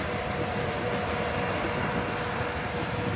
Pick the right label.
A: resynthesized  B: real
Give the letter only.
B